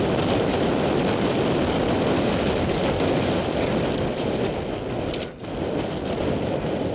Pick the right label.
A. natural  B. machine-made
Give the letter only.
A